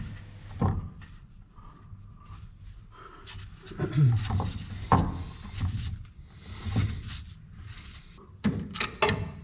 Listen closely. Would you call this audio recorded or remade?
recorded